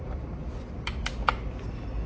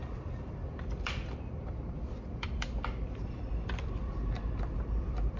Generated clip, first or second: second